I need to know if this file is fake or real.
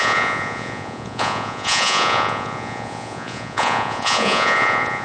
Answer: fake